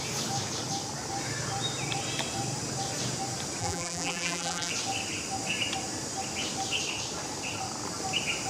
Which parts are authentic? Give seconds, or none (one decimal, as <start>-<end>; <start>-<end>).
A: 0.0-3.6; 4.7-8.5